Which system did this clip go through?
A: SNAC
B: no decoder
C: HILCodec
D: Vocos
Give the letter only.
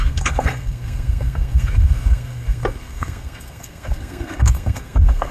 A